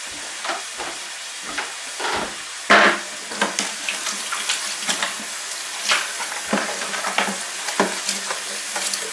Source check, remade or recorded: recorded